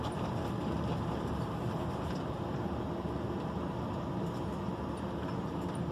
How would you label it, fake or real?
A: real